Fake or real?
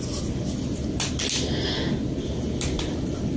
real